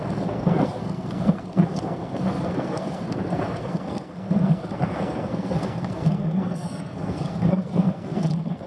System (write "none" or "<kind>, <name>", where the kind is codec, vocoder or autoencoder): codec, SNAC